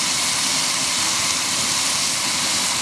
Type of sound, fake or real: real